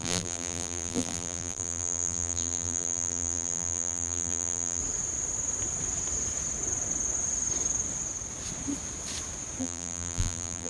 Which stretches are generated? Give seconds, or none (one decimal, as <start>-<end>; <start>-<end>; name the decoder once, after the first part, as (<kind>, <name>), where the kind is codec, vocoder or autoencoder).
0.0-4.8 (vocoder, BigVGAN v2); 9.6-10.7